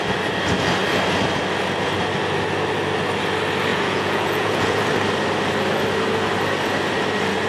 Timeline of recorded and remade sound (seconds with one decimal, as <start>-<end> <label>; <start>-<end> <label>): 0.0-3.7 recorded; 3.7-4.8 remade; 4.8-7.5 recorded